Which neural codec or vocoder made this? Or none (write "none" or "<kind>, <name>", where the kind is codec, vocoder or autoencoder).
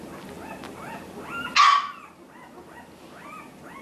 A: none